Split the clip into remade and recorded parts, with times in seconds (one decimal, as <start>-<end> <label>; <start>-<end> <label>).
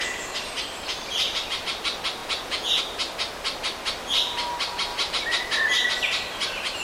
0.0-2.2 recorded; 2.2-2.8 remade; 2.8-6.8 recorded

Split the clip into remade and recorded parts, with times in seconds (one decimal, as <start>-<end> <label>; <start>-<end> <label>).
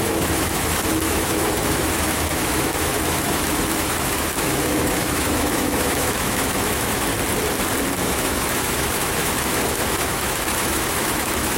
0.0-7.1 remade; 7.1-8.0 recorded; 8.0-11.6 remade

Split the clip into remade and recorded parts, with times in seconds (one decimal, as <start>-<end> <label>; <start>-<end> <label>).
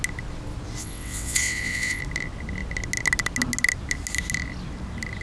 0.0-0.8 recorded; 0.8-2.0 remade; 2.0-5.2 recorded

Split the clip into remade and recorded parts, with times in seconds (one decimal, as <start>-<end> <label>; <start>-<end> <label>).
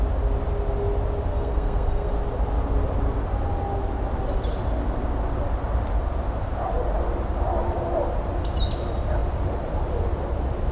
0.0-1.3 recorded; 1.3-2.1 remade; 2.1-10.7 recorded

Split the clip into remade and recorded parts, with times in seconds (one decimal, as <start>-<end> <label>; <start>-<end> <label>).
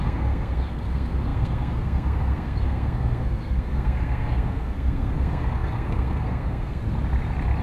0.0-6.8 remade; 6.8-7.6 recorded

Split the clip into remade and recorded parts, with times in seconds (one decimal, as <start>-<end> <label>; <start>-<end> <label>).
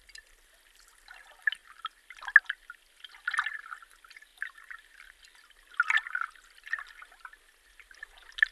0.0-8.5 recorded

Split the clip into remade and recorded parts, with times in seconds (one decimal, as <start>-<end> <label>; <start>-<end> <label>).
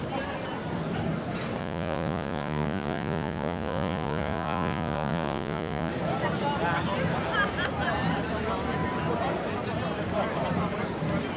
0.0-1.6 recorded; 1.6-5.9 remade; 5.9-11.4 recorded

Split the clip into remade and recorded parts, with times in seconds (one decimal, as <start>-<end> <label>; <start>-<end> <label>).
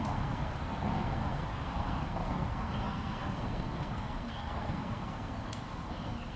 0.0-6.4 remade